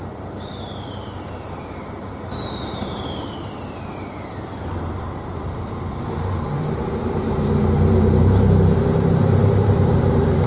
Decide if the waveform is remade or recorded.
remade